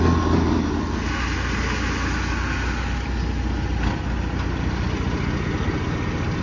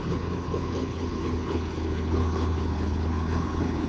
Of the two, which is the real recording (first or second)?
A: first